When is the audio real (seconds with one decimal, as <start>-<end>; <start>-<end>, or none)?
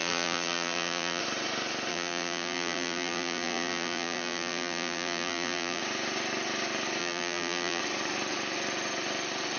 1.2-1.9; 5.8-7.0; 7.8-9.6